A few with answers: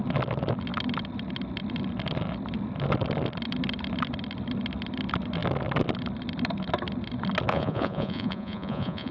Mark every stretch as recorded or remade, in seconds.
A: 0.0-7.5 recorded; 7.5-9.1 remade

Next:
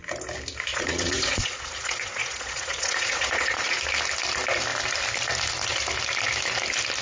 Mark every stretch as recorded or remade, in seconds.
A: 0.0-0.7 recorded; 0.7-3.8 remade; 3.8-7.0 recorded

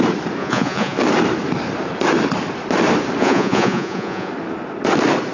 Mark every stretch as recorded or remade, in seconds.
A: 0.0-0.4 recorded; 0.4-1.0 remade; 1.0-3.2 recorded; 3.2-4.3 remade; 4.3-5.3 recorded

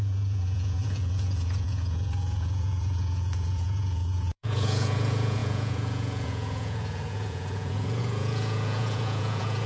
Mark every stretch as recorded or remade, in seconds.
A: 0.0-9.7 remade